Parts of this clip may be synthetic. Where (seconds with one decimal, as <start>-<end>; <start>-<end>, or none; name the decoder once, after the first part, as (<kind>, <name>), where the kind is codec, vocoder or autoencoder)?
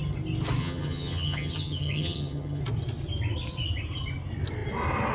0.6-2.6 (vocoder, HiFi-GAN)